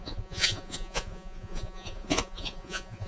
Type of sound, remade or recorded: remade